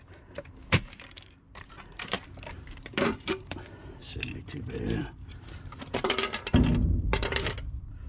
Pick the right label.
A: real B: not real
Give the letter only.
B